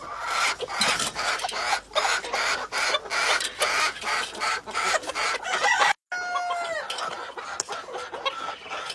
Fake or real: real